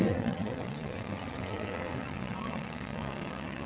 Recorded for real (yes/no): no